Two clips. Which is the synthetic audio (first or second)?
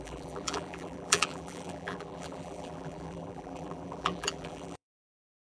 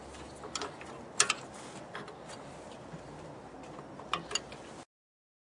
first